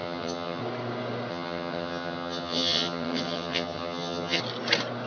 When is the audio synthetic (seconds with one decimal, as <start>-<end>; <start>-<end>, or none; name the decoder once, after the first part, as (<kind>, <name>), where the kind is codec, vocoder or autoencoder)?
0.0-0.6 (vocoder, HiFi-GAN); 1.3-4.4